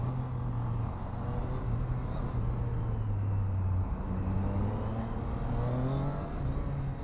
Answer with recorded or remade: recorded